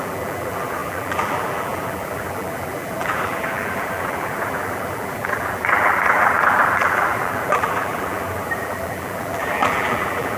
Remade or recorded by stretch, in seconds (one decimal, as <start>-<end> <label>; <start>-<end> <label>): 0.0-10.4 remade